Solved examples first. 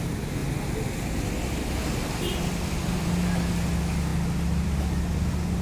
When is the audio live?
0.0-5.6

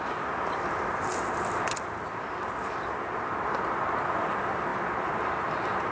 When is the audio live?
0.0-5.9

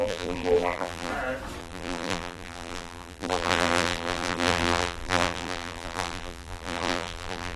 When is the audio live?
1.1-1.6

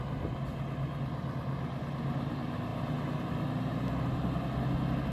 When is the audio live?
0.0-5.1

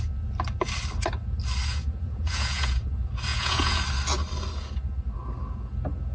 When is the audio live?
0.0-1.7; 2.9-3.3; 3.8-6.1

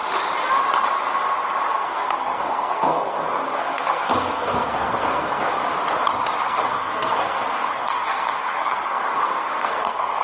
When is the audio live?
0.0-1.7; 5.6-6.4

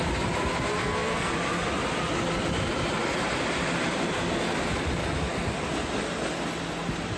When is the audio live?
0.0-0.8; 1.3-7.2